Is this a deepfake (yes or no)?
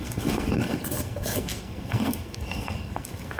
yes